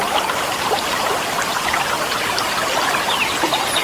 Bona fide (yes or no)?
yes